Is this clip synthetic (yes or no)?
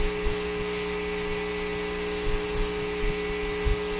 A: no